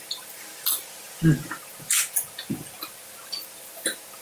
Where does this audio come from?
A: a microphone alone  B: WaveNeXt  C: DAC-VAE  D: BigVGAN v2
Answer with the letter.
A